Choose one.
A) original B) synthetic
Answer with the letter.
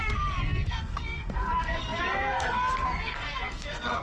B